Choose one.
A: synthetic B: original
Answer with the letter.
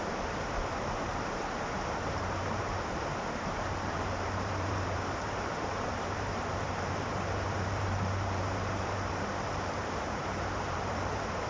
A